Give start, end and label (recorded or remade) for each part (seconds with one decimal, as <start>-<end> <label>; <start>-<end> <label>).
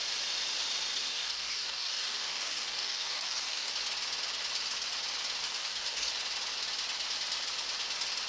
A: 0.0-1.1 recorded; 1.1-3.7 remade; 3.7-5.4 recorded; 5.4-6.1 remade; 6.1-8.3 recorded